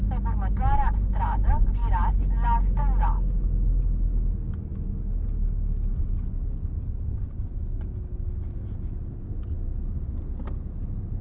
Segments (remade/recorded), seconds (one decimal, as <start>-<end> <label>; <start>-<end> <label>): 0.0-11.2 recorded